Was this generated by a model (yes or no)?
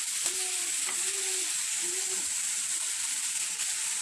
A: no